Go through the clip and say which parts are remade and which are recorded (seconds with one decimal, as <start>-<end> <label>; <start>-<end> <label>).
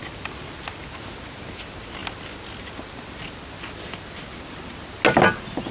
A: 0.0-5.7 recorded